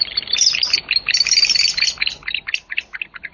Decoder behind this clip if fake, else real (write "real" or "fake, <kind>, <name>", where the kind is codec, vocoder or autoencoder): real